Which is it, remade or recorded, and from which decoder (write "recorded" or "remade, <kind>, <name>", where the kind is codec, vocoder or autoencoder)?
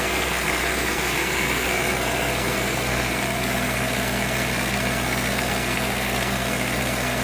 remade, codec, SNAC